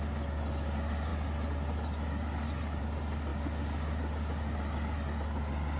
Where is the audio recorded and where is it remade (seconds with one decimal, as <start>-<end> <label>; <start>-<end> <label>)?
0.0-5.8 recorded